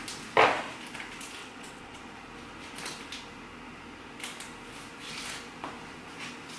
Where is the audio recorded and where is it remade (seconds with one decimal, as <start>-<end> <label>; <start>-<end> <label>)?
0.0-1.4 recorded; 1.4-2.0 remade; 2.0-6.6 recorded